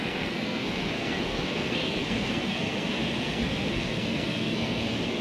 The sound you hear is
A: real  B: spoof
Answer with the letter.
B